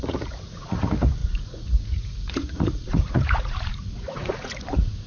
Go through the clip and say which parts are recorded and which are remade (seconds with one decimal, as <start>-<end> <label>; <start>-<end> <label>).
0.0-5.1 remade